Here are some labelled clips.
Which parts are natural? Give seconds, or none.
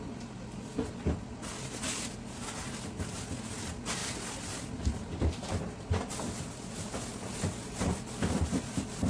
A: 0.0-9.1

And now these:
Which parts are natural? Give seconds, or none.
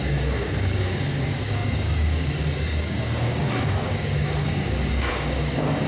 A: none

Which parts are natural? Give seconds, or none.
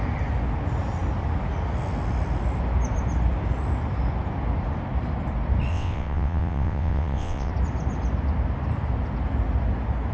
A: 0.0-5.7; 7.5-10.1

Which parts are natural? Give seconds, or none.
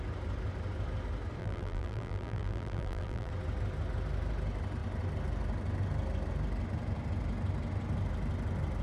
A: 0.0-1.4; 3.3-8.8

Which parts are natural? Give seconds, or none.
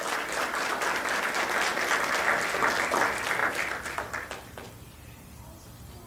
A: 0.0-6.1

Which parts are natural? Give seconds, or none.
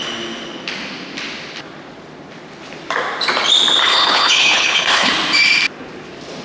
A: 0.0-3.8; 5.1-6.4